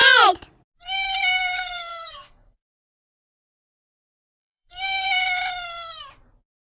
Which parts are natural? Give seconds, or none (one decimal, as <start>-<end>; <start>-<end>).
0.0-1.2; 5.2-6.7